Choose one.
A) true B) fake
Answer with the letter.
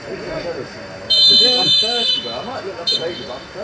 B